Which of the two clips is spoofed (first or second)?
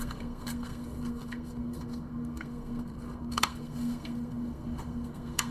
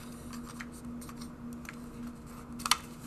first